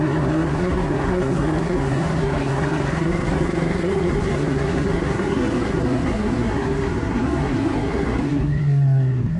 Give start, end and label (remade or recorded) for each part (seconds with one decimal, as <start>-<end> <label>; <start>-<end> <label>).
0.0-9.4 remade